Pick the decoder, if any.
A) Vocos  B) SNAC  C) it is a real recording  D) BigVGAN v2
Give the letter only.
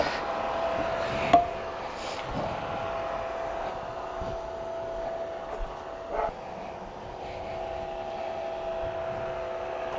C